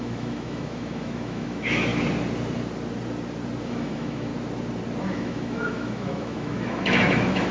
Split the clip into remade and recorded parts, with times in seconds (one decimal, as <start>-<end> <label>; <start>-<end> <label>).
0.0-1.9 remade; 1.9-3.6 recorded; 3.6-4.3 remade; 4.3-5.0 recorded; 5.0-7.5 remade